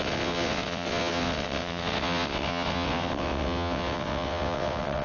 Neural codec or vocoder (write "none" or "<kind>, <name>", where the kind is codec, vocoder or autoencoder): vocoder, WaveNeXt